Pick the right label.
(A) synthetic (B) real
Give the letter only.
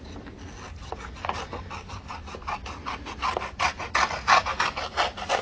B